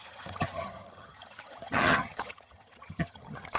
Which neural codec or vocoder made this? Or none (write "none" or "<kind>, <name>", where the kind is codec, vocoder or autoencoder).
vocoder, HiFi-GAN